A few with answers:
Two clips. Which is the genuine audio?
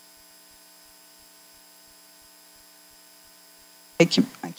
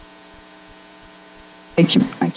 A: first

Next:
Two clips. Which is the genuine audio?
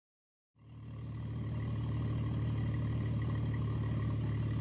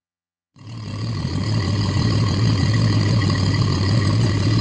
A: first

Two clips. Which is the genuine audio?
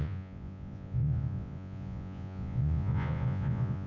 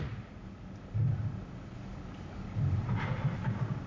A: second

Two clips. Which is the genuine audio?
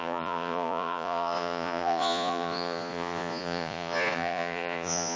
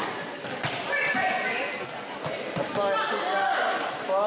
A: second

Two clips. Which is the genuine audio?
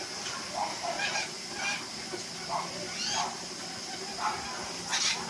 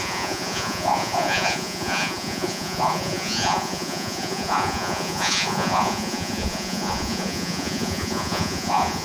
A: first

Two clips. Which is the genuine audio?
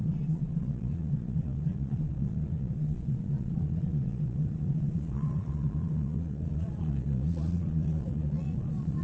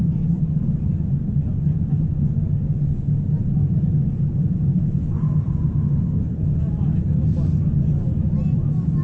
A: second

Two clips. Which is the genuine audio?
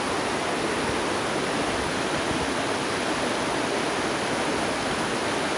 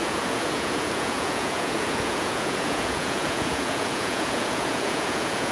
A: first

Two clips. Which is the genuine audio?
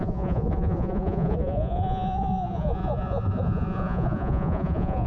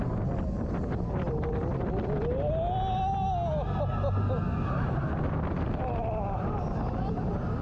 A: second